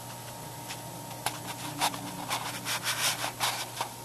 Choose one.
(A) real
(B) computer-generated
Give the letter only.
A